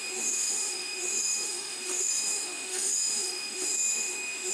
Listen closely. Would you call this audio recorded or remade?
remade